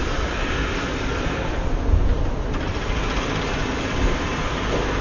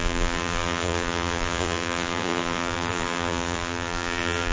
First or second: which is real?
first